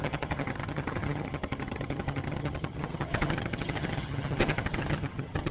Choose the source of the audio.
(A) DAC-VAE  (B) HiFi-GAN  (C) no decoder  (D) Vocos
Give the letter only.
B